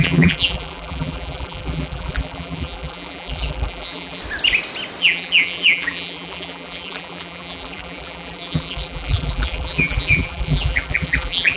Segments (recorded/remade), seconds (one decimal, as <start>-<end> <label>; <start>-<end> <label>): 0.0-4.2 remade; 4.2-5.0 recorded; 5.0-11.6 remade